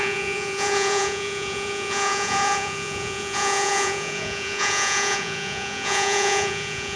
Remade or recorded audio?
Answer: remade